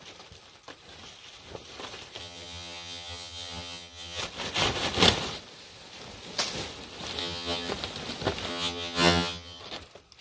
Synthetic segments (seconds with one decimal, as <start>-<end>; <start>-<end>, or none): 2.2-4.2; 7.2-7.7; 8.5-9.6